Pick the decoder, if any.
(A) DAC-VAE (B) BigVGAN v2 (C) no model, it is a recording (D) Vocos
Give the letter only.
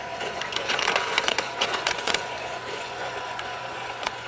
D